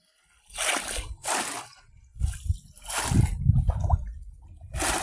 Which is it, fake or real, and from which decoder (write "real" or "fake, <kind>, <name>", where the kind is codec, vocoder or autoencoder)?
real